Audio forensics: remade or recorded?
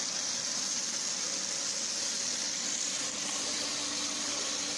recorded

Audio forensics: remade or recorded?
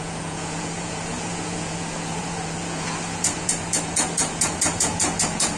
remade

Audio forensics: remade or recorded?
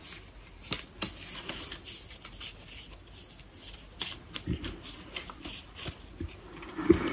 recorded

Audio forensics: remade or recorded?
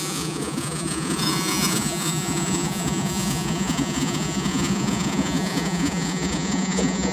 remade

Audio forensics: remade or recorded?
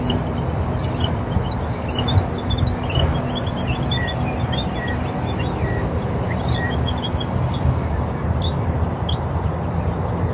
recorded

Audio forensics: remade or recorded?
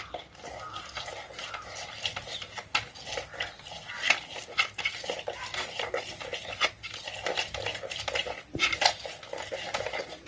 recorded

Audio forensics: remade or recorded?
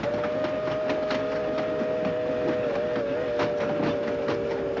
recorded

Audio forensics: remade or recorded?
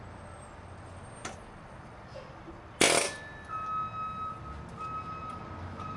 recorded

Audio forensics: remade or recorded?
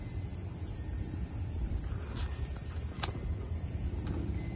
recorded